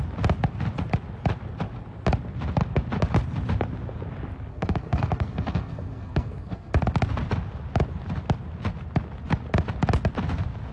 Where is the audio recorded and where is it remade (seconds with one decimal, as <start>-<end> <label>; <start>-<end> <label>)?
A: 0.0-4.5 recorded; 4.5-6.7 remade; 6.7-10.7 recorded